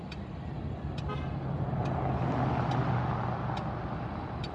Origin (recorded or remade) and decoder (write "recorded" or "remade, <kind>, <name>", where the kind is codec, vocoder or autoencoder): recorded